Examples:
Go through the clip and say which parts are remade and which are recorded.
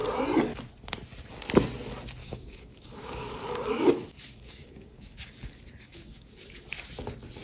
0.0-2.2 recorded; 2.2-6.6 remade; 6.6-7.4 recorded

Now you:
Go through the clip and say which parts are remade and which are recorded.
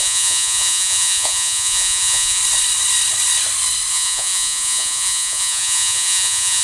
0.0-2.4 remade; 2.4-3.9 recorded; 3.9-6.6 remade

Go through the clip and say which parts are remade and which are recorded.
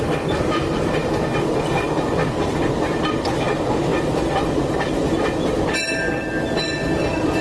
0.0-7.4 recorded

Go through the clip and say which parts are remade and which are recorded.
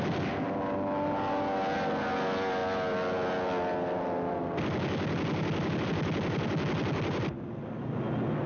0.0-8.5 recorded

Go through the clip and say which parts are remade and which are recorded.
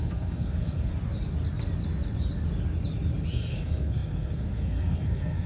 0.0-0.9 remade; 0.9-3.3 recorded; 3.3-5.5 remade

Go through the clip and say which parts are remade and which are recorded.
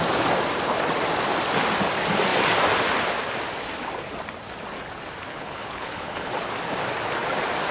0.0-5.3 recorded; 5.3-6.3 remade; 6.3-7.7 recorded